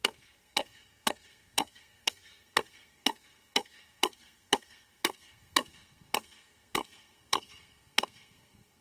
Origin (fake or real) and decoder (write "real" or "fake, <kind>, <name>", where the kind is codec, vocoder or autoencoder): fake, codec, SNAC